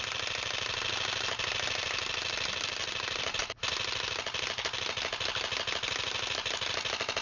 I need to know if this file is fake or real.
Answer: real